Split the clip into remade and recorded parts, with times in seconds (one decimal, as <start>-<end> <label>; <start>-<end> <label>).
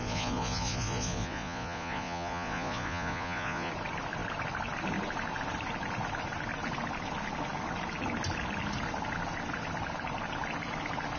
0.0-3.7 remade; 3.7-11.2 recorded